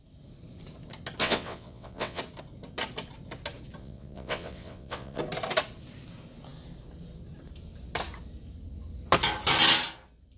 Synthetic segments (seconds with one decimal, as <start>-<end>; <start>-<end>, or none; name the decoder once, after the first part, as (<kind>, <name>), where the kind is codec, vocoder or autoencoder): 1.2-2.2 (vocoder, WaveNeXt); 3.8-5.2